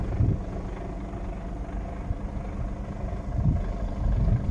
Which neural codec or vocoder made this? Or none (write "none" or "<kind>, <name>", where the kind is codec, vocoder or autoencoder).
none